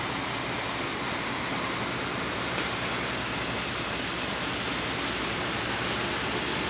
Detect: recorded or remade recorded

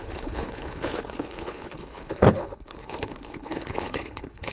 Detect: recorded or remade remade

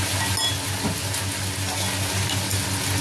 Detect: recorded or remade recorded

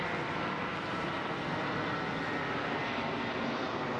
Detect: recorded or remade recorded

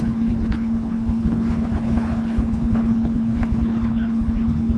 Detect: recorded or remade remade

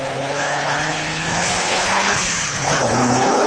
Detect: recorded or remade remade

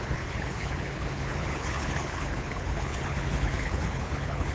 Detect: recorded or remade remade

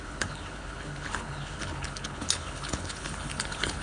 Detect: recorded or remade remade